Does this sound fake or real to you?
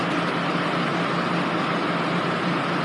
real